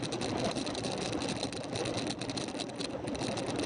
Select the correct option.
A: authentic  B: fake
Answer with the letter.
A